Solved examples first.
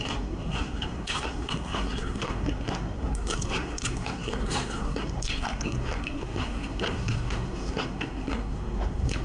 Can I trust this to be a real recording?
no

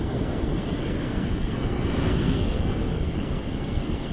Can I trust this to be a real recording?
no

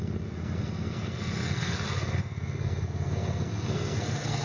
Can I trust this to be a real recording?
no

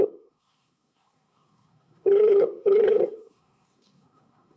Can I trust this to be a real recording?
no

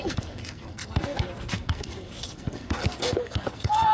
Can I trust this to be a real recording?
no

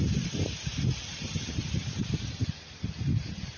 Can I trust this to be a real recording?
yes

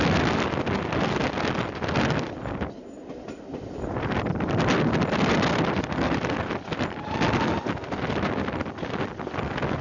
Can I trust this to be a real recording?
yes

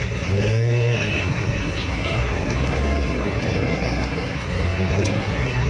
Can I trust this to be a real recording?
no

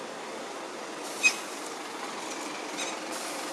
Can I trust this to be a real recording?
yes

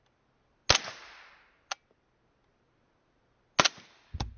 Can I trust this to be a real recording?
yes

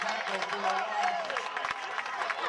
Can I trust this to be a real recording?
yes